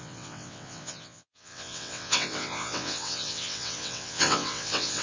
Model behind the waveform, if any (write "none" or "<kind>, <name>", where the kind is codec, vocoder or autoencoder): vocoder, WaveNeXt